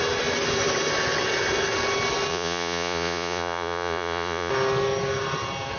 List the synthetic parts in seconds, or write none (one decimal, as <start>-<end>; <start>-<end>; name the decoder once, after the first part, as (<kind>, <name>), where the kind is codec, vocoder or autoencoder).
2.3-4.5 (vocoder, Vocos)